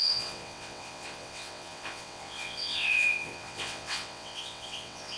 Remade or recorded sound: remade